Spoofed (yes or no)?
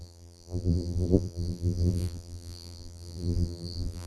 yes